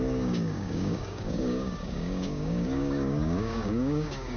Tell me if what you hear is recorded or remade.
remade